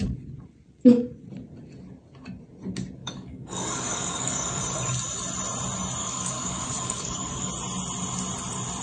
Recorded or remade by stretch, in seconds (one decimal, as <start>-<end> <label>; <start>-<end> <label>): 0.0-3.0 recorded; 3.0-4.6 remade; 4.6-6.0 recorded; 6.0-7.5 remade; 7.5-8.8 recorded